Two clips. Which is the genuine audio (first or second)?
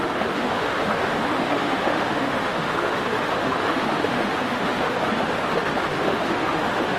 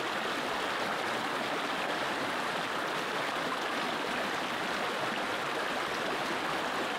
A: second